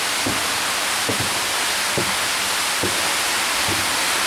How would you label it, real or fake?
real